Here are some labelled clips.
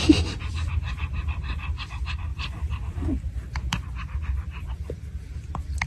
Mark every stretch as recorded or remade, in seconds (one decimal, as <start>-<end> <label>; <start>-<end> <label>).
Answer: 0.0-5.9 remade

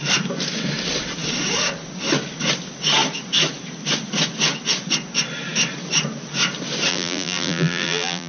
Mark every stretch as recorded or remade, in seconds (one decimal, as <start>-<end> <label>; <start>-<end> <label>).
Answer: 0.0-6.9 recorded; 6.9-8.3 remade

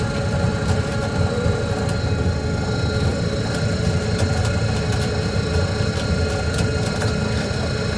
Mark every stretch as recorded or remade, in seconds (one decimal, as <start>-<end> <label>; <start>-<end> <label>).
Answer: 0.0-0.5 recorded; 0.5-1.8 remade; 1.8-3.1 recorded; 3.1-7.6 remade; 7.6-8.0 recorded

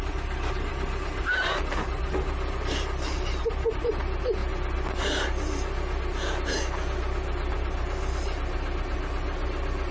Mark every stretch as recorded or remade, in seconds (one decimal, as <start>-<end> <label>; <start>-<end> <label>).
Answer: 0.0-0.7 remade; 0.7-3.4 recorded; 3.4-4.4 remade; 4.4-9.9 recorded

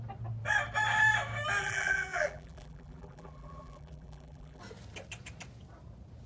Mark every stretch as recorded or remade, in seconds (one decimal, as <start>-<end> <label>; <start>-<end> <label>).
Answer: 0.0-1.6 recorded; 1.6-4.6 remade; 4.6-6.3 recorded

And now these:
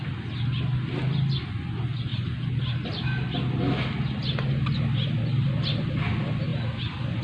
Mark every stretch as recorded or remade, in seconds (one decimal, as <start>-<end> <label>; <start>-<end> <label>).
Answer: 0.0-7.2 recorded